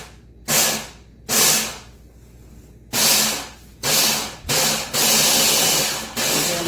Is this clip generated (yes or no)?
no